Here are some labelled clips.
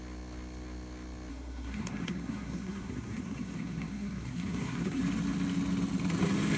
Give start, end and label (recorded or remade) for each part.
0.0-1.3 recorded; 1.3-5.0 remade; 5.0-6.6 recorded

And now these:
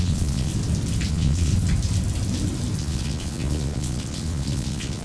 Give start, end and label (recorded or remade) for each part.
0.0-0.5 remade; 0.5-1.1 recorded; 1.1-1.5 remade; 1.5-2.8 recorded; 2.8-5.0 remade

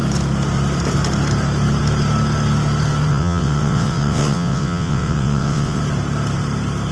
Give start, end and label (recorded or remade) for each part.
0.0-3.1 recorded; 3.1-5.8 remade; 5.8-6.9 recorded

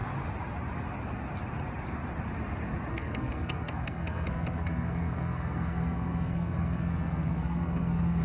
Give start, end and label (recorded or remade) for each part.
0.0-2.9 recorded; 2.9-8.2 remade

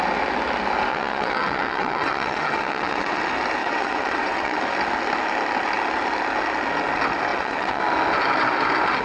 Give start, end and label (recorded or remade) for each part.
0.0-0.9 recorded; 0.9-3.2 remade; 3.2-3.6 recorded; 3.6-4.6 remade; 4.6-7.3 recorded; 7.3-7.8 remade; 7.8-9.0 recorded

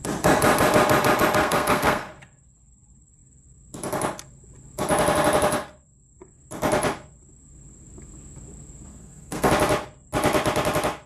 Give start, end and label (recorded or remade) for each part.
0.0-1.4 recorded; 1.4-2.1 remade; 2.1-8.9 recorded; 8.9-9.5 remade; 9.5-11.1 recorded